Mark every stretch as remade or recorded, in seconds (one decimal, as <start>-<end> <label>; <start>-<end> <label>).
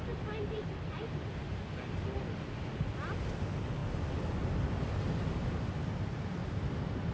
0.0-7.1 recorded